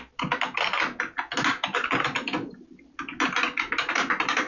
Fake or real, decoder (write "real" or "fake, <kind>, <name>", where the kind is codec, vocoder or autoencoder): real